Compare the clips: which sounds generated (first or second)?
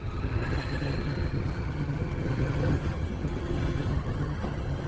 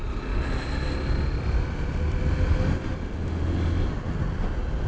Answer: first